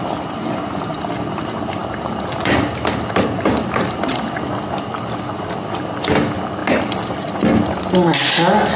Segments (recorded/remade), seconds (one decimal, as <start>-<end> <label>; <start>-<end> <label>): 0.0-8.8 recorded